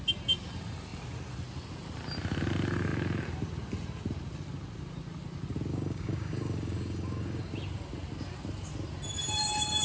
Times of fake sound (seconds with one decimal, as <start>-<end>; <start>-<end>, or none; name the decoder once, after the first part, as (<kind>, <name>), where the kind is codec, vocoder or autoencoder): 5.7-7.5 (codec, DAC)